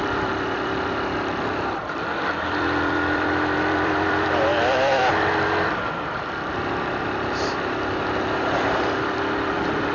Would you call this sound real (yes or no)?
no